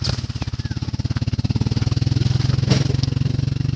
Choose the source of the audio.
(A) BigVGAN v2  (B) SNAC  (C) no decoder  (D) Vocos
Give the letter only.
C